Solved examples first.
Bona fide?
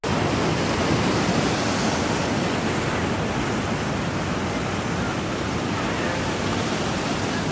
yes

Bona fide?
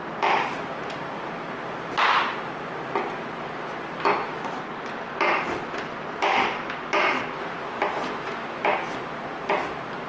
yes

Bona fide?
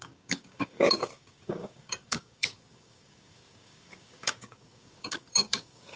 no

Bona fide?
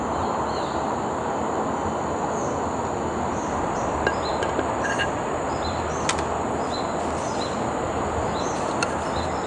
yes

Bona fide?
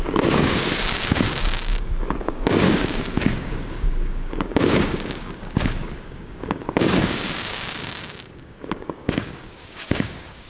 no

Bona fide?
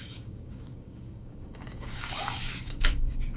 no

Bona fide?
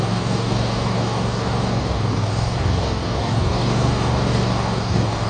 no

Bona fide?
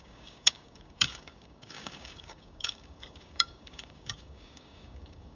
no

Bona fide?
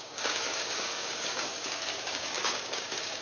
no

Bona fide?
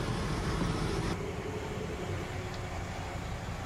yes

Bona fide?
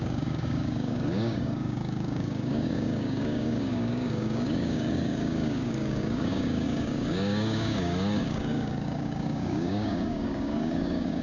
no